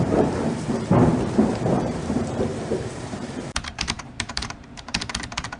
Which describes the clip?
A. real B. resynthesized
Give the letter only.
B